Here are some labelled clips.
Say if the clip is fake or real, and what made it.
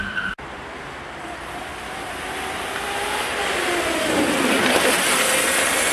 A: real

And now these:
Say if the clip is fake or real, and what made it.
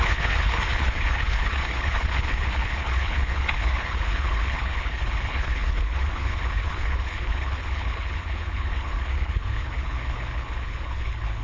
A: fake, codec, HILCodec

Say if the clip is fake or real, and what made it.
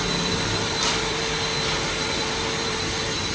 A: fake, vocoder, BigVGAN v2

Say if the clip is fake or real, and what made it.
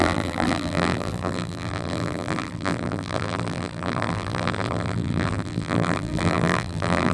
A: fake, vocoder, BigVGAN v2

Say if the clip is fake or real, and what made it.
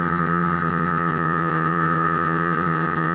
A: fake, vocoder, HiFi-GAN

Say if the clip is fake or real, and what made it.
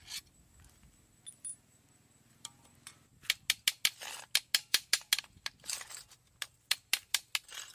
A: real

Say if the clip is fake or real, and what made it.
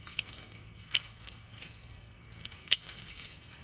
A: fake, codec, SNAC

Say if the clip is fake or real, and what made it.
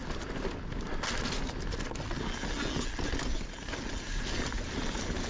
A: real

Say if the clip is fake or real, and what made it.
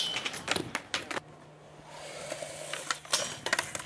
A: real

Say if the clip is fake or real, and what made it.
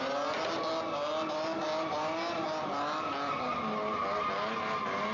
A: real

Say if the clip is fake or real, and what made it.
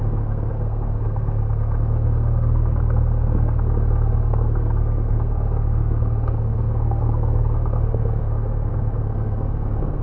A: fake, codec, SNAC